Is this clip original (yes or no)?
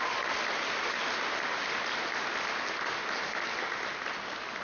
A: yes